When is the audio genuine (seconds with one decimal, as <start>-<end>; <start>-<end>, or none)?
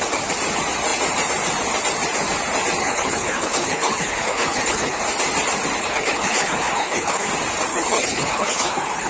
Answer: 0.0-2.8; 5.0-5.8; 7.3-7.7